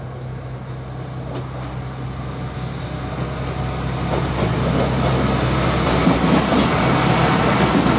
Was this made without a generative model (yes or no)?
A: yes